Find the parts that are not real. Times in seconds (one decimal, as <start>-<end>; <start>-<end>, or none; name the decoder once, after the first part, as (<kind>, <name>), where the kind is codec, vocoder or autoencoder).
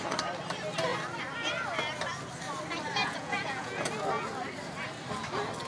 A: 3.0-3.9 (vocoder, Vocos)